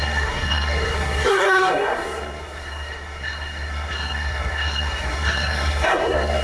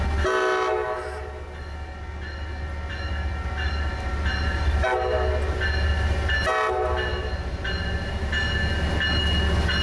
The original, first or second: second